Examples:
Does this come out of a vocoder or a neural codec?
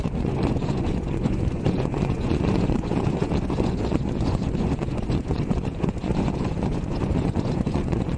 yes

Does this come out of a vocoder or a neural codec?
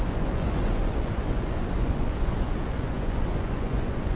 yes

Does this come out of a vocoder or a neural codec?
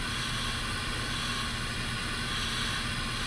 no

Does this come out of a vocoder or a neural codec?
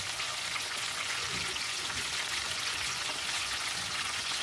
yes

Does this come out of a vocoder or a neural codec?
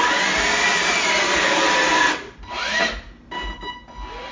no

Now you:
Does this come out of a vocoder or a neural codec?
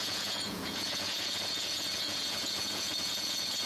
yes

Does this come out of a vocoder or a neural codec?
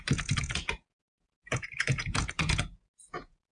yes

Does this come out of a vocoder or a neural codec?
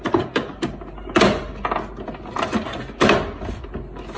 no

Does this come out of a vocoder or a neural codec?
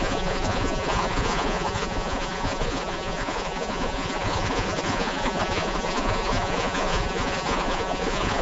yes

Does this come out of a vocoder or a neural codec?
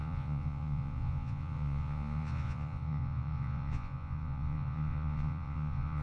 yes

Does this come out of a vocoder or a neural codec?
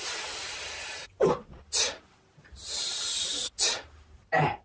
no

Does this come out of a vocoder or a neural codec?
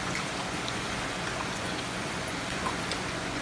yes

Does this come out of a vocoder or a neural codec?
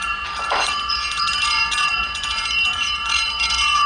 yes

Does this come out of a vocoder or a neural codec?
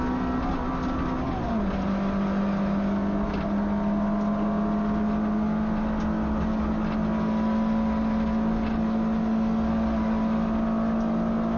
no